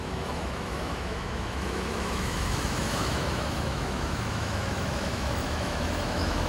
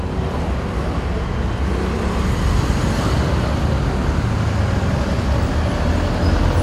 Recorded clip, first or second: second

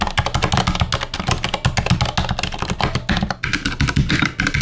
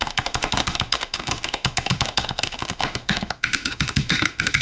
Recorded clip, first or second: first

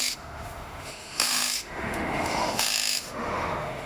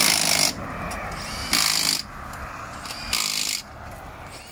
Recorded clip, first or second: second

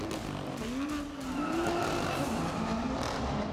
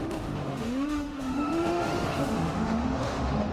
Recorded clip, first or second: first